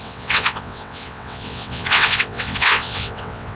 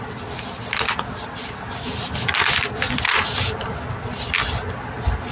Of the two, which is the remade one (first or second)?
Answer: first